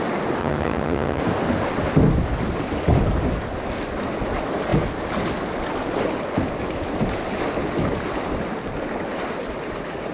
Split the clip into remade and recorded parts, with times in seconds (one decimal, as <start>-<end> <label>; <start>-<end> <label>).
0.0-0.4 recorded; 0.4-1.2 remade; 1.2-10.1 recorded